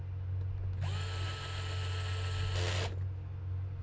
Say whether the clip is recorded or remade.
recorded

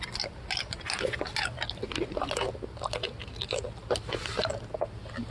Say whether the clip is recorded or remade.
recorded